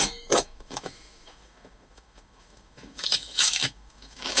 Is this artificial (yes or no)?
yes